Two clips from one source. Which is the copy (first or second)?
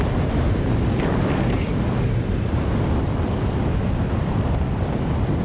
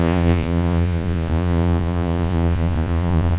second